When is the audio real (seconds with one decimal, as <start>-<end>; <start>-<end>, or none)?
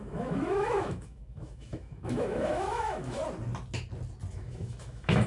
3.2-4.3